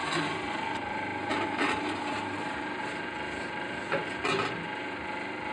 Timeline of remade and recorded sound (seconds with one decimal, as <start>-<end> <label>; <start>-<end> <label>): 0.0-4.0 remade; 4.0-4.8 recorded; 4.8-5.5 remade